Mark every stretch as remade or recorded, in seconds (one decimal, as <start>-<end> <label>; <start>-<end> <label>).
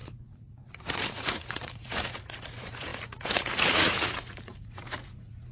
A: 0.0-5.5 remade